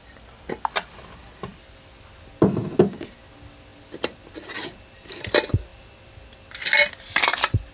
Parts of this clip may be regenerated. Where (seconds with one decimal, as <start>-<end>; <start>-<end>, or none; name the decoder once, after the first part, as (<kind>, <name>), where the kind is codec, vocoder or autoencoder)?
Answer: none